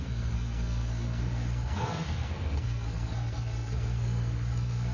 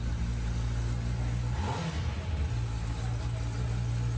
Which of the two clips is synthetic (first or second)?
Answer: first